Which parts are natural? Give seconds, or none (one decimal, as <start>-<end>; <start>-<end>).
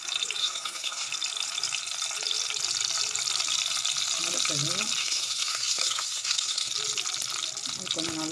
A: 0.0-0.4; 1.1-5.0; 6.7-8.3